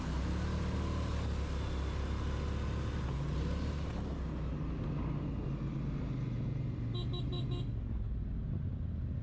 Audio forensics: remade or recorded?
recorded